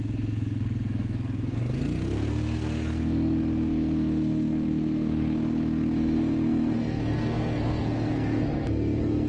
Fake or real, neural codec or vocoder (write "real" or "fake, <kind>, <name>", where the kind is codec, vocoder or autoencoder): fake, codec, SNAC